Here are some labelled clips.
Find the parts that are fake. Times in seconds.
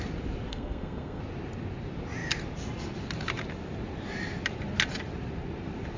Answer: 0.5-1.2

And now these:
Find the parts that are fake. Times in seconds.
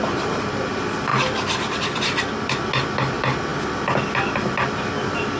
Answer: none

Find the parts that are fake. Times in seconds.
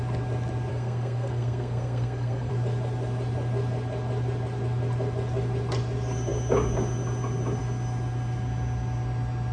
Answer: 0.7-2.5